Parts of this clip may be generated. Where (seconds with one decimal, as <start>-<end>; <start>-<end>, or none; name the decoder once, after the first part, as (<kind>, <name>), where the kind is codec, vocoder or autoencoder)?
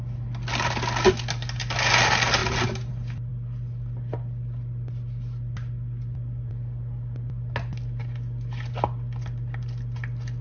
none